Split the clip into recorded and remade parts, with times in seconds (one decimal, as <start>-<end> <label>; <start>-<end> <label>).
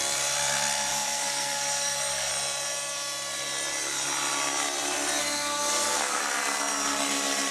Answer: 0.0-0.9 recorded; 0.9-2.3 remade; 2.3-5.2 recorded; 5.2-6.2 remade; 6.2-7.5 recorded